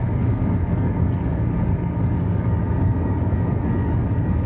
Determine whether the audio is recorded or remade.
remade